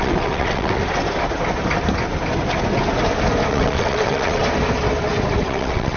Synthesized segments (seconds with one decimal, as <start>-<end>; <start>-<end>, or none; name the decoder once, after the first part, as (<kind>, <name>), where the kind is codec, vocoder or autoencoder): 0.0-0.8 (vocoder, WaveNeXt); 3.5-4.4; 5.4-6.0